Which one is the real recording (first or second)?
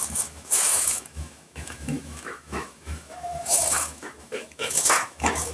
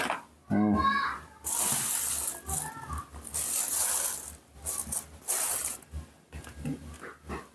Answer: second